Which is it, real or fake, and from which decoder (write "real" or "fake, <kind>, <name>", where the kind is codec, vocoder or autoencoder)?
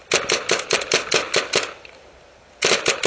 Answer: real